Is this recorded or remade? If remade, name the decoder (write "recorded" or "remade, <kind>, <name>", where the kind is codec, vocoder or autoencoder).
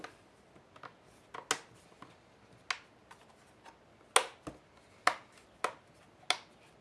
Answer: recorded